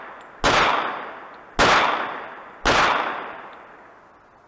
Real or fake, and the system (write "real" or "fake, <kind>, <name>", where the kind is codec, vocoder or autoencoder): real